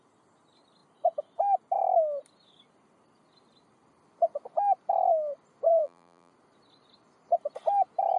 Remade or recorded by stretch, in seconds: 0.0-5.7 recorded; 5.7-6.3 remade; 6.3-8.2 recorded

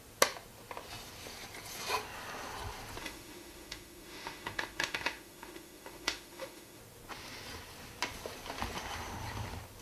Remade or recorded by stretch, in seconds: 0.0-3.0 recorded; 3.0-6.8 remade; 6.8-9.8 recorded

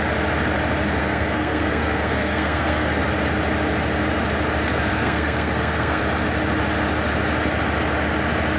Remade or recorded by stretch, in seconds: 0.0-1.0 recorded; 1.0-3.0 remade; 3.0-4.9 recorded; 4.9-6.0 remade; 6.0-8.6 recorded

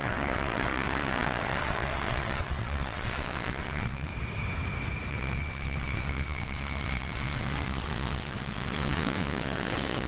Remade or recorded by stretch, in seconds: 0.0-4.1 remade; 4.1-5.1 recorded; 5.1-10.1 remade

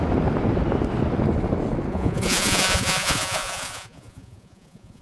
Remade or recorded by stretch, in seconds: 0.0-1.9 recorded; 1.9-5.0 remade

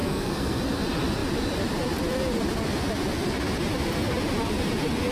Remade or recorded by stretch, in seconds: 0.0-0.6 remade; 0.6-5.1 recorded

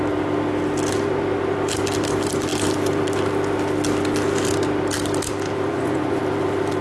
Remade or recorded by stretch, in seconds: 0.0-5.7 recorded; 5.7-6.2 remade; 6.2-6.8 recorded